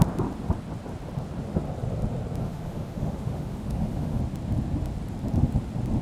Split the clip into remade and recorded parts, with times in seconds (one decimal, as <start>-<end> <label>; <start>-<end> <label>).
0.0-2.4 recorded; 2.4-4.2 remade; 4.2-6.0 recorded

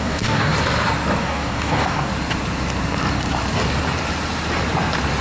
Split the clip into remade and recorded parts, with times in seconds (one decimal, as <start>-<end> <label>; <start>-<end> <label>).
0.0-0.5 remade; 0.5-1.2 recorded; 1.2-2.1 remade; 2.1-5.2 recorded

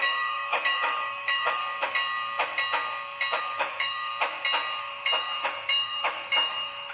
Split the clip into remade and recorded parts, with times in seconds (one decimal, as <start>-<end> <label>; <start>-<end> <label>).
0.0-1.6 remade; 1.6-3.4 recorded; 3.4-4.1 remade; 4.1-4.8 recorded; 4.8-6.9 remade

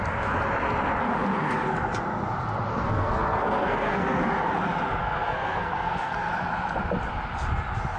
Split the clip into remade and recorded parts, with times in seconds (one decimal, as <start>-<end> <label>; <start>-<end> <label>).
0.0-2.7 recorded; 2.7-4.2 remade; 4.2-5.0 recorded; 5.0-6.3 remade; 6.3-8.0 recorded

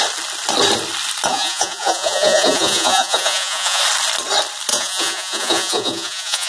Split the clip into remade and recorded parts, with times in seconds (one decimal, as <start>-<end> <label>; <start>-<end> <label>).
0.0-1.3 recorded; 1.3-3.8 remade; 3.8-4.7 recorded; 4.7-6.5 remade

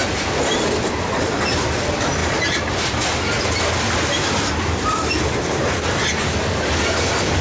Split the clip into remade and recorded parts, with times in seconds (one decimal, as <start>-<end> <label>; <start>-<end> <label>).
0.0-7.4 recorded

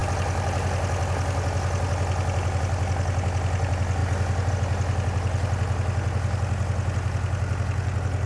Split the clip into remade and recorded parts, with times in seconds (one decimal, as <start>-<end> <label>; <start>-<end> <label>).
0.0-8.3 recorded